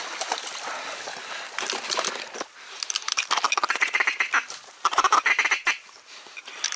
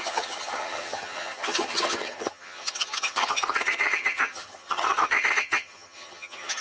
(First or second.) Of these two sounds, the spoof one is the second